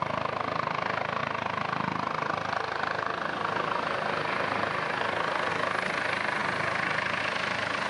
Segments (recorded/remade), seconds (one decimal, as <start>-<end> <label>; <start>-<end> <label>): 0.0-7.9 recorded